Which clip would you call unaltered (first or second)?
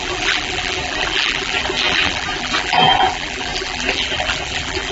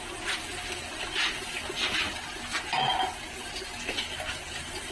second